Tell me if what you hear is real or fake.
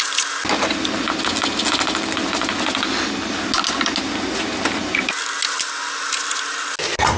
real